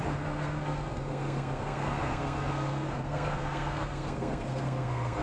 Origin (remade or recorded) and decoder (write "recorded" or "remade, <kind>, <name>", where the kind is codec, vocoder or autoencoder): remade, codec, SNAC